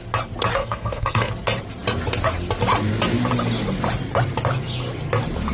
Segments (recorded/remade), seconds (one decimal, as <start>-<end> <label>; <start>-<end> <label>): 0.0-0.6 recorded; 0.6-1.3 remade; 1.3-5.5 recorded